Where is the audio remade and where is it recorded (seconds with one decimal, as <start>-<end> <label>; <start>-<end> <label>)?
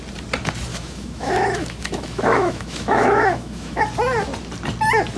0.0-0.7 recorded; 0.7-3.8 remade; 3.8-5.2 recorded